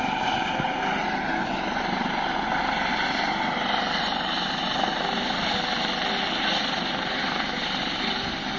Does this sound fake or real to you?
real